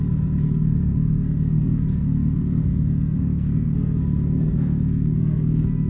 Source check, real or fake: fake